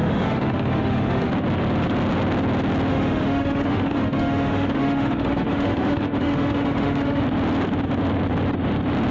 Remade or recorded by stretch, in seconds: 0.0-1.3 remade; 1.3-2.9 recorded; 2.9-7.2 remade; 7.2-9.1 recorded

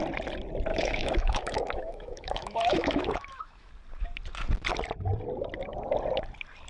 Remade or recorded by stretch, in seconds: 0.0-0.7 recorded; 0.7-3.7 remade; 3.7-6.7 recorded

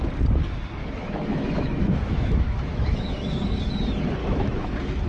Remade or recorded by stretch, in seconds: 0.0-0.8 recorded; 0.8-3.6 remade; 3.6-4.2 recorded; 4.2-5.1 remade

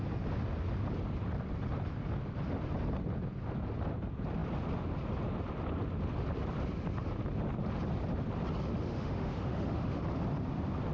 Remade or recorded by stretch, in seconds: 0.0-8.9 recorded; 8.9-10.0 remade; 10.0-10.9 recorded

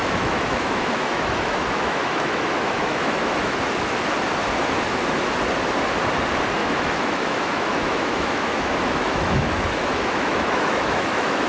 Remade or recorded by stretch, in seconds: 0.0-3.6 remade; 3.6-6.6 recorded; 6.6-11.5 remade

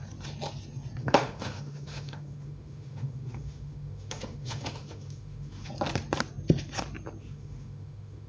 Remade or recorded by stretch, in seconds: 0.0-1.0 recorded; 1.0-5.7 remade; 5.7-7.2 recorded; 7.2-8.3 remade

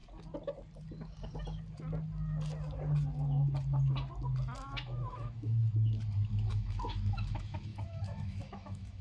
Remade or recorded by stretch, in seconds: 0.0-4.6 recorded; 4.6-5.6 remade; 5.6-6.5 recorded; 6.5-9.0 remade

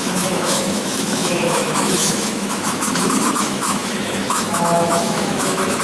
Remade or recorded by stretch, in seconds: 0.0-5.8 remade